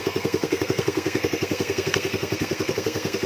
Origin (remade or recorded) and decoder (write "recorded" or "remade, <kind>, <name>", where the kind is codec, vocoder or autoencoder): remade, codec, SNAC